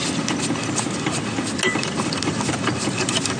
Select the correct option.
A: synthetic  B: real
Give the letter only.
B